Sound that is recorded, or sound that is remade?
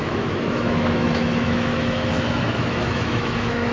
remade